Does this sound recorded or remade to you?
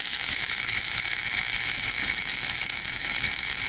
remade